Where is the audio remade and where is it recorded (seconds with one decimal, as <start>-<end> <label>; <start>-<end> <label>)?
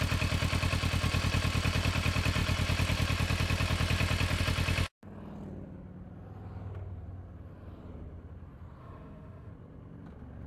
0.0-8.8 recorded; 8.8-9.5 remade; 9.5-10.5 recorded